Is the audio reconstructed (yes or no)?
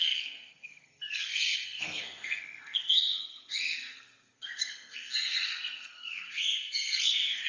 yes